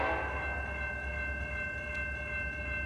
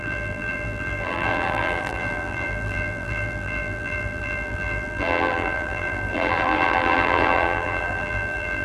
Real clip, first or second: first